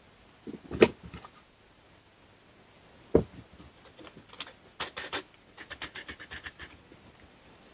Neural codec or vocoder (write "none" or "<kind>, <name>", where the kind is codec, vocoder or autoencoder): none